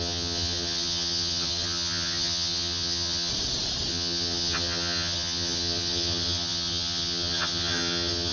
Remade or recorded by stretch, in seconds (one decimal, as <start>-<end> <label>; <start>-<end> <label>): 0.0-3.3 remade; 3.3-3.9 recorded; 3.9-8.3 remade